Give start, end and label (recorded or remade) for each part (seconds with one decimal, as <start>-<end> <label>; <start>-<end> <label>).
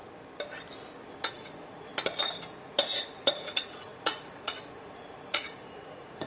0.0-1.3 recorded; 1.3-1.9 remade; 1.9-2.7 recorded; 2.7-6.3 remade